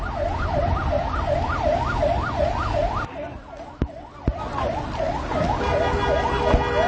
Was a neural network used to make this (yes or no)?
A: no